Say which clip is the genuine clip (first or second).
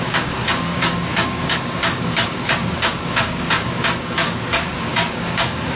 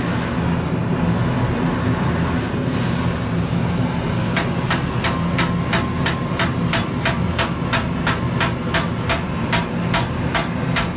second